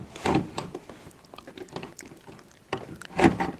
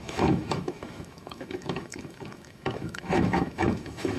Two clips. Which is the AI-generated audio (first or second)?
second